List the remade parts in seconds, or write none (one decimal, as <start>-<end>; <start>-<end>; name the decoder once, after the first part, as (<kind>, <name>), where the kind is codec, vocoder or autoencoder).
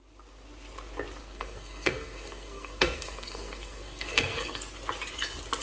1.2-4.6 (codec, SNAC)